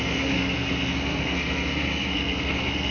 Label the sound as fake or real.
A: fake